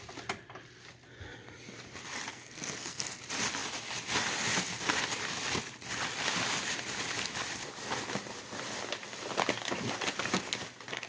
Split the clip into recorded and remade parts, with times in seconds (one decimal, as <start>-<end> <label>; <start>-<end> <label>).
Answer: 0.0-2.3 recorded; 2.3-3.2 remade; 3.2-11.1 recorded